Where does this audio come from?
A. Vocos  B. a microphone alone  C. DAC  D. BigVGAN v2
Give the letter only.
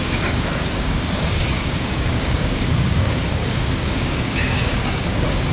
C